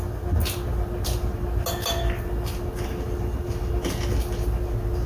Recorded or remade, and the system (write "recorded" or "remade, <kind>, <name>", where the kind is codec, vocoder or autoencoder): recorded